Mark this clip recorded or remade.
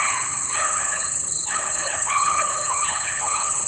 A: remade